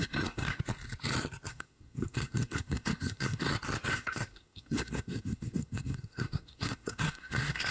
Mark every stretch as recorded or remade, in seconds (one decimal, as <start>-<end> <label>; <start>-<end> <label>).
0.0-0.6 remade; 0.6-1.5 recorded; 1.5-3.5 remade; 3.5-3.9 recorded; 3.9-7.7 remade